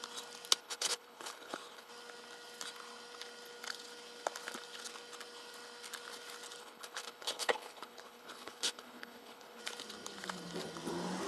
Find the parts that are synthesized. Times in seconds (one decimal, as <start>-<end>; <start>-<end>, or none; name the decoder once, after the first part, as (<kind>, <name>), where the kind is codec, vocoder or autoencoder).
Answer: 0.6-1.9 (codec, HILCodec); 6.6-9.6